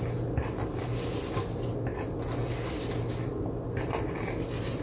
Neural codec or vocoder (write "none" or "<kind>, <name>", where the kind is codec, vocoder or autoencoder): none